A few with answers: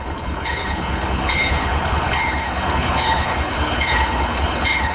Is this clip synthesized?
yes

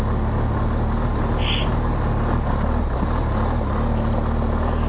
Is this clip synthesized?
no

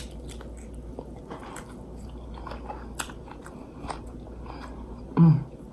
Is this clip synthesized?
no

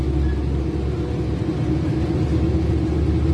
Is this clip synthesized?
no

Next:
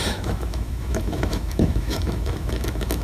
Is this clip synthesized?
yes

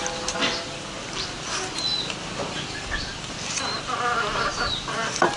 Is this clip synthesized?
no